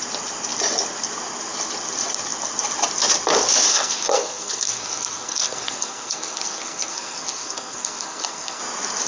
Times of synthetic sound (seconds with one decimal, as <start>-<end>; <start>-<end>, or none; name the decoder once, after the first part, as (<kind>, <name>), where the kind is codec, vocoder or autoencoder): 3.7-8.6 (codec, SNAC)